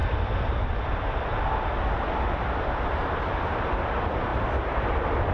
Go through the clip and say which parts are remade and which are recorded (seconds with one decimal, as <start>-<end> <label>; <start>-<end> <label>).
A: 0.0-5.3 recorded